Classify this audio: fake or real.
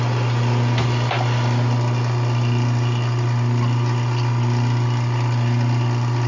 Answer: real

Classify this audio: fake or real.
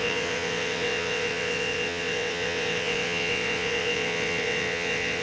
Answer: fake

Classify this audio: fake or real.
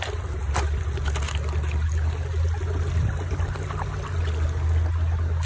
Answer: real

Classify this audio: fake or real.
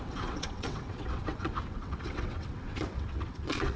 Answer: fake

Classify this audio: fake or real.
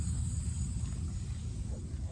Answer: real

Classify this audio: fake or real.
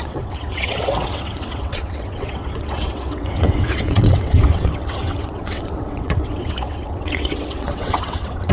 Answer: fake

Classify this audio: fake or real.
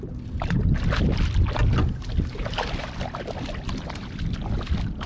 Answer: real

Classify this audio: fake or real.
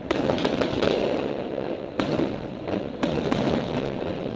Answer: fake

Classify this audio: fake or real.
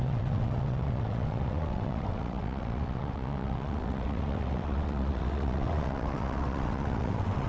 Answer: fake